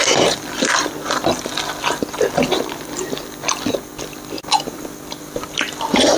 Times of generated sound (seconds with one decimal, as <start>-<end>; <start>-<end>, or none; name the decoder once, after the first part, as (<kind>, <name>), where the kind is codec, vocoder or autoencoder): none